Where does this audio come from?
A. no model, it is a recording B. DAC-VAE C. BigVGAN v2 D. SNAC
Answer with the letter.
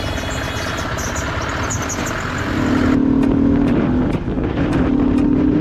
A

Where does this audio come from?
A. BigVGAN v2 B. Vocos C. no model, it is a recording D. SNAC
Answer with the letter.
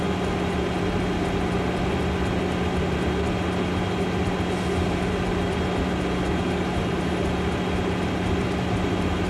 C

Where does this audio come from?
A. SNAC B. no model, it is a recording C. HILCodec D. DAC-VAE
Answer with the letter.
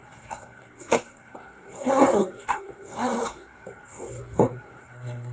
A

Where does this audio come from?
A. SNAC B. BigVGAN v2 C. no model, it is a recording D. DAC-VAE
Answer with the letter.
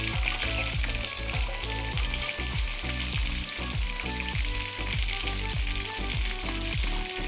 C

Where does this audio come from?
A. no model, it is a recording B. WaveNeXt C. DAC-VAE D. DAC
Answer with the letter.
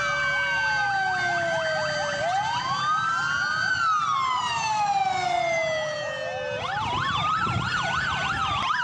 A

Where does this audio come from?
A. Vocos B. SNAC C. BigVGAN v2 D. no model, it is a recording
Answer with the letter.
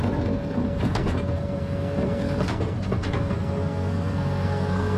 B